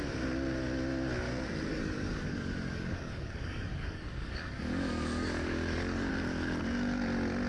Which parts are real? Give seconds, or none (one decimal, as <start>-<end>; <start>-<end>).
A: 0.0-1.7; 6.1-7.5